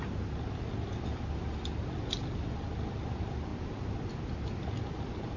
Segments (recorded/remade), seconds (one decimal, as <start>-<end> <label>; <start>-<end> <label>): 0.0-5.4 recorded